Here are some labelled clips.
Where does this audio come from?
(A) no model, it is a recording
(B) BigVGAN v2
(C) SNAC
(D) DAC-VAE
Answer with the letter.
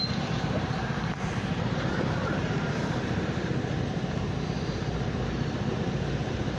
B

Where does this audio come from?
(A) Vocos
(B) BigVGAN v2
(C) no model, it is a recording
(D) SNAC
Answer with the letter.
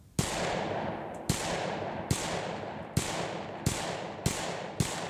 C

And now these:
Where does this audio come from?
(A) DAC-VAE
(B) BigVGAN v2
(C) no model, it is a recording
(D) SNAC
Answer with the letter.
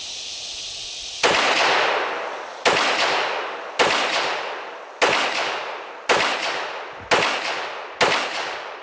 C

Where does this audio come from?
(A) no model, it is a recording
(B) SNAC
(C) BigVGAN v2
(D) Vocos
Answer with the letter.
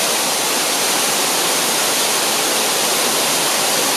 C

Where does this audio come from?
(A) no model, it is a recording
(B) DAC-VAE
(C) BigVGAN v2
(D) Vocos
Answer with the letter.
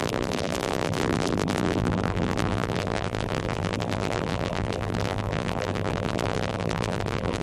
C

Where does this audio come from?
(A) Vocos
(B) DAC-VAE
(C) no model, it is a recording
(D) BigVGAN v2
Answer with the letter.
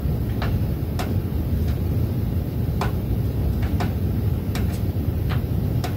C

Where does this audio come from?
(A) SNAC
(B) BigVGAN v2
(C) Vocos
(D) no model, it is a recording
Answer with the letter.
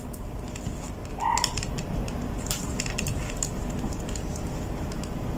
D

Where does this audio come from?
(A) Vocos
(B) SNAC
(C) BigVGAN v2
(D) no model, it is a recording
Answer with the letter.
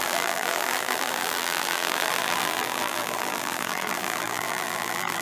C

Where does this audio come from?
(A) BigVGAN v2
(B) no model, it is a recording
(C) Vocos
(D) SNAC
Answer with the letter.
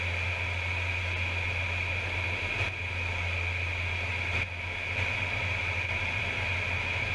B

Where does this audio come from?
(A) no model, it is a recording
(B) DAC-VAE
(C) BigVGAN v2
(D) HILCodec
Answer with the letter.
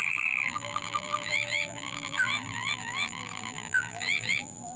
C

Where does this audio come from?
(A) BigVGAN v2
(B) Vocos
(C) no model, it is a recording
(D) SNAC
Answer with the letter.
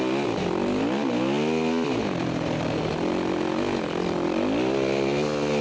C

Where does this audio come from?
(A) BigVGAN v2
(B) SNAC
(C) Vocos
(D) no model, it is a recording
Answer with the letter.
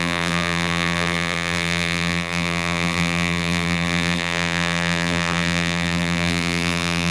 A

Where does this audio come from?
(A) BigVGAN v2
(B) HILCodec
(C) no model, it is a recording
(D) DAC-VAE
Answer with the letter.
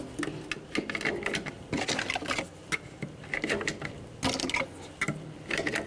C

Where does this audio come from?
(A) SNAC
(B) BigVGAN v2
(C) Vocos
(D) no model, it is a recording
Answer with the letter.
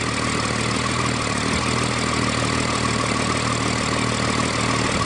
D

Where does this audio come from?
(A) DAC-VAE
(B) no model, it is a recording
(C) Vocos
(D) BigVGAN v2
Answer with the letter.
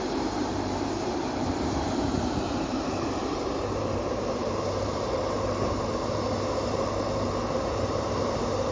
D